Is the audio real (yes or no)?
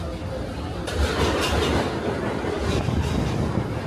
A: yes